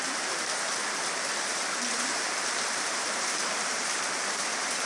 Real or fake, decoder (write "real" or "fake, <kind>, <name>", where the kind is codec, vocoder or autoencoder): fake, vocoder, BigVGAN v2